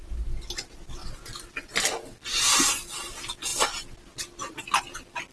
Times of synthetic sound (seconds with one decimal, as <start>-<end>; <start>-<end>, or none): none